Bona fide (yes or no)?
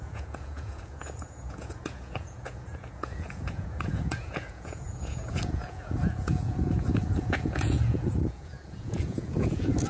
no